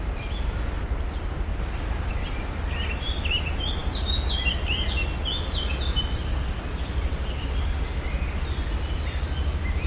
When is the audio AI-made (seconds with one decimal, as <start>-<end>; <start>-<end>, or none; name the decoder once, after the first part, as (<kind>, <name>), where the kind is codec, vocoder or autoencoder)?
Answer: none